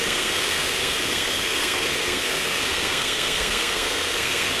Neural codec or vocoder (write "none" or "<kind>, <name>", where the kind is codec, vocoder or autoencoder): codec, SNAC